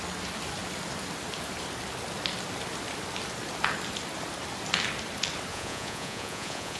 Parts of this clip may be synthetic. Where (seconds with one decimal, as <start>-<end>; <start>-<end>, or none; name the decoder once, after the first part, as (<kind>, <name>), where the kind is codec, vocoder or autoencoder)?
5.5-6.8 (vocoder, Vocos)

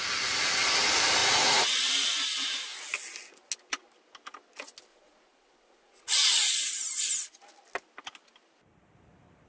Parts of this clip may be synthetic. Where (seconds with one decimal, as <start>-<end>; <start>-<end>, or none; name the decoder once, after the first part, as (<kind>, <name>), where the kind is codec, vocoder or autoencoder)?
1.2-1.9 (vocoder, Vocos); 4.9-6.7

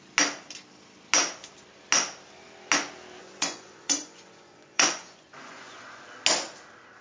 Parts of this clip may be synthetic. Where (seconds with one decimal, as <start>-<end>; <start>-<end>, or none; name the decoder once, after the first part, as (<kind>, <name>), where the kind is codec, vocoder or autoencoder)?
3.2-6.0 (vocoder, Vocos)

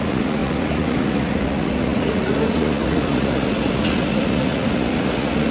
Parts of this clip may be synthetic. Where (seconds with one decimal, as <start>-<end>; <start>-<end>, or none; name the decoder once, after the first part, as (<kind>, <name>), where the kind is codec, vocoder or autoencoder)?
0.0-5.5 (vocoder, Vocos)

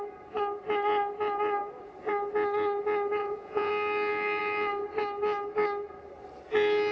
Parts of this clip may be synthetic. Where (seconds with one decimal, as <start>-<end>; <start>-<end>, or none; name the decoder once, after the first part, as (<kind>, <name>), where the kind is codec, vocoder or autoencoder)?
3.2-3.7 (vocoder, Vocos)

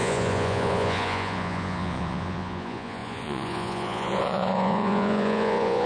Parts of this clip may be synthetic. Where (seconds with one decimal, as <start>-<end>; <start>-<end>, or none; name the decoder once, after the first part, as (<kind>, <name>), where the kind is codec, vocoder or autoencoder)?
0.0-5.9 (vocoder, Vocos)